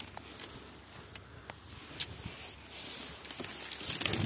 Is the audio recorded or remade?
recorded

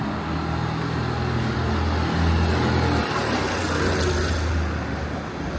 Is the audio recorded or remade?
recorded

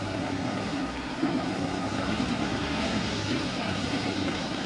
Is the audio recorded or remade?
remade